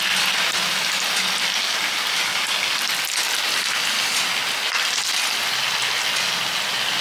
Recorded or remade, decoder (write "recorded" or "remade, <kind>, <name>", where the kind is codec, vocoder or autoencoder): recorded